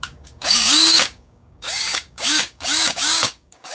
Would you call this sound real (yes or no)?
no